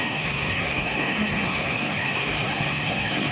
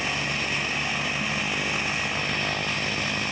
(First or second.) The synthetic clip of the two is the first